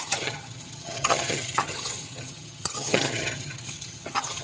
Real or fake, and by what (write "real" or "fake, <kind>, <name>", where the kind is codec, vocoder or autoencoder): fake, vocoder, HiFi-GAN